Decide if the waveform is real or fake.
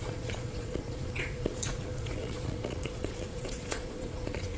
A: fake